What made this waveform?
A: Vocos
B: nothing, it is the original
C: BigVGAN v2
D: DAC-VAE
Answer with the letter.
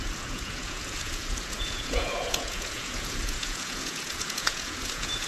A